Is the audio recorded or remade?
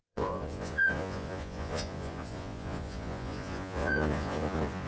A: remade